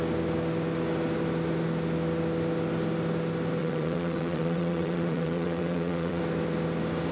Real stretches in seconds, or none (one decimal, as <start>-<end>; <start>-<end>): 0.0-3.6; 6.2-7.1